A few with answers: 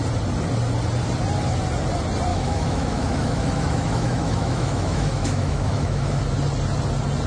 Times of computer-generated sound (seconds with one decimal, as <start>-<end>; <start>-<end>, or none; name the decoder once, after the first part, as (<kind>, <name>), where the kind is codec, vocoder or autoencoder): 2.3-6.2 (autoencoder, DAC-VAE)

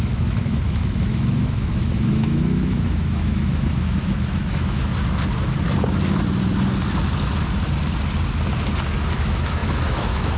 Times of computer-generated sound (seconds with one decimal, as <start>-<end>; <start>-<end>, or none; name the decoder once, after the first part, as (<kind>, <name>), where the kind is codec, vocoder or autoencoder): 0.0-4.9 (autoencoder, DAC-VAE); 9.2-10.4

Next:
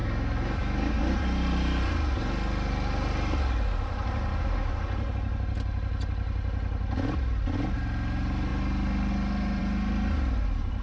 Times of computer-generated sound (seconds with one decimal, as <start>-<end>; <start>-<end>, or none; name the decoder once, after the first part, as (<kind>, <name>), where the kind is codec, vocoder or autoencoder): 0.0-1.0 (autoencoder, DAC-VAE); 4.3-4.8

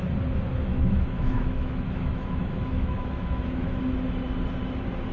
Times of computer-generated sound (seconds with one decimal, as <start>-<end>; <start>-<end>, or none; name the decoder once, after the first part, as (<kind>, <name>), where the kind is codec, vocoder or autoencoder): 0.7-3.8 (autoencoder, DAC-VAE)